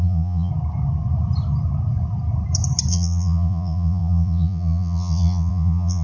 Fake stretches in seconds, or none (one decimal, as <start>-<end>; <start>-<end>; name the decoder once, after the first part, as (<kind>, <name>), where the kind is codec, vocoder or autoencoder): 0.0-0.5 (vocoder, Vocos); 2.9-6.0